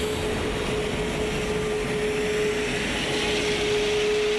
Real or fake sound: real